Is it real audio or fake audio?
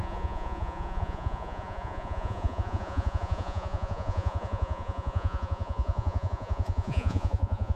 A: fake